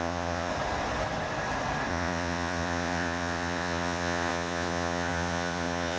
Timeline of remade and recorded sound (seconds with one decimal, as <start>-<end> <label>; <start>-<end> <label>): 0.0-0.5 remade; 0.5-1.9 recorded; 1.9-6.0 remade